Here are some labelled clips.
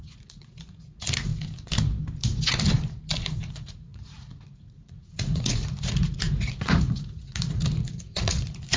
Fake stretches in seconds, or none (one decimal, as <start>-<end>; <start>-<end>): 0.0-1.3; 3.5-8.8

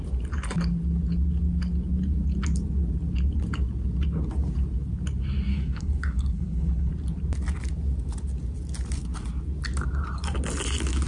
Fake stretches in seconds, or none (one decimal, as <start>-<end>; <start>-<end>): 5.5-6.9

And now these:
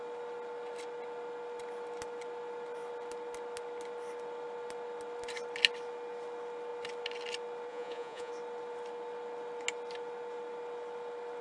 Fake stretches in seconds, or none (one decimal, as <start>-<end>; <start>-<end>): 7.7-8.3

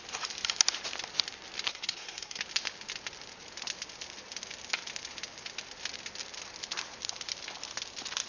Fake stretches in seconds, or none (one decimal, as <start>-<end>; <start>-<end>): 1.7-2.4

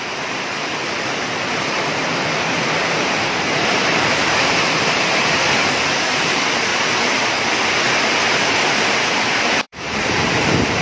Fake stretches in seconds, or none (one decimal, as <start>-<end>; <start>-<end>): 0.0-6.7; 8.3-10.8

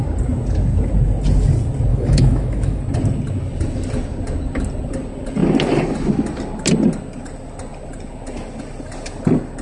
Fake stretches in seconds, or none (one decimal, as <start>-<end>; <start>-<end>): 1.9-2.8

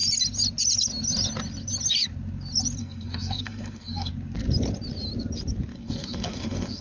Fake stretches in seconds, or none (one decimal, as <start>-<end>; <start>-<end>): 2.8-4.1; 5.7-6.8

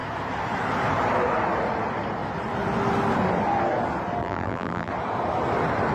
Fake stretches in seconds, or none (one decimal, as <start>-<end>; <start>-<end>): 4.2-4.9